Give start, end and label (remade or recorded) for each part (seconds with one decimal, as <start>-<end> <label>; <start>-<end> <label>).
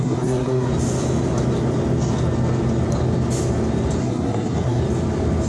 0.0-0.7 remade; 0.7-4.0 recorded; 4.0-4.8 remade; 4.8-5.5 recorded